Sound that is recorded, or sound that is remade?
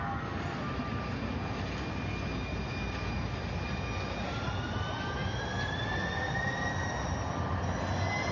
recorded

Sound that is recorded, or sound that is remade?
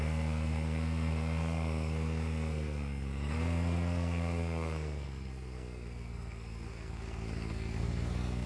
remade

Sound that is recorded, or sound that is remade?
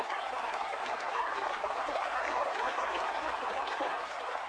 remade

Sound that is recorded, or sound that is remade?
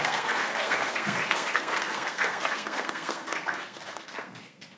remade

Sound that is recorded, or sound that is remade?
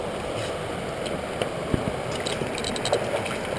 recorded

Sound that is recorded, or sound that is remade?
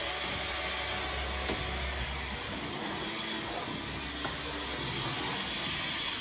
recorded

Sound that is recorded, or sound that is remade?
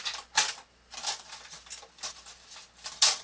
recorded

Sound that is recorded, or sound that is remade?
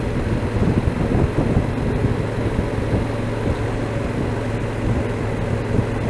recorded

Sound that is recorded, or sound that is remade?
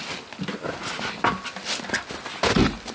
recorded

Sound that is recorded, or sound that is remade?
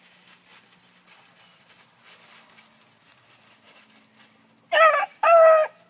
recorded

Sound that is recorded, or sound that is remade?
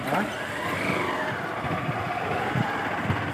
recorded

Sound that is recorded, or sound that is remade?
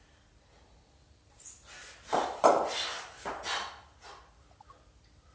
recorded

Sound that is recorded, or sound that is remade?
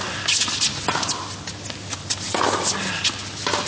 recorded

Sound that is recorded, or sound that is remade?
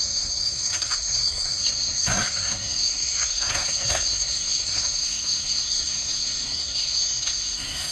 remade